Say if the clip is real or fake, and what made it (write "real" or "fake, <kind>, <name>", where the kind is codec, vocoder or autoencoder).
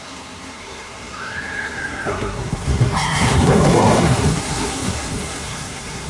fake, codec, SNAC